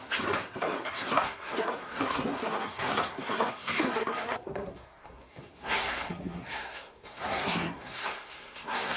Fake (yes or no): yes